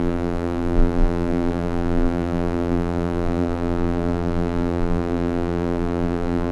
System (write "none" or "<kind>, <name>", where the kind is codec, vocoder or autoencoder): vocoder, BigVGAN v2